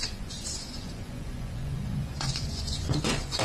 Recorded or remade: remade